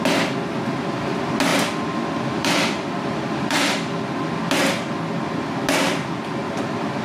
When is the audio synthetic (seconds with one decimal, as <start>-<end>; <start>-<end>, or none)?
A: 1.5-4.0